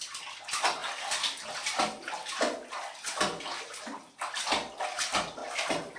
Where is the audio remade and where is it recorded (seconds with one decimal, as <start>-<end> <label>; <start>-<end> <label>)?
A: 0.0-6.0 recorded